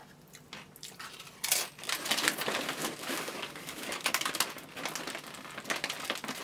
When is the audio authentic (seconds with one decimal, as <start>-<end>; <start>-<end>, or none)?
0.0-2.8; 4.4-6.4